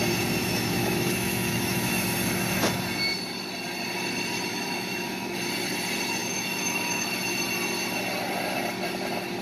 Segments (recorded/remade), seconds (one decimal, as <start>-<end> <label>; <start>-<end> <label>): 0.0-0.4 recorded; 0.4-1.9 remade; 1.9-4.5 recorded; 4.5-5.4 remade; 5.4-6.2 recorded; 6.2-7.1 remade; 7.1-9.4 recorded